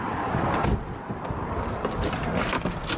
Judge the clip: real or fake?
real